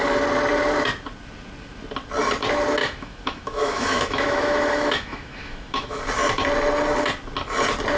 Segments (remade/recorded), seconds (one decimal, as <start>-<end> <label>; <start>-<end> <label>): 0.0-2.8 recorded; 2.8-6.0 remade; 6.0-8.0 recorded